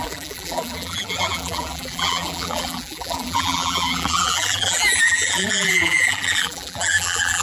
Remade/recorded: remade